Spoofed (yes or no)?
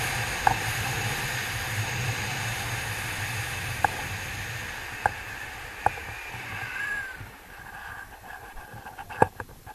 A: no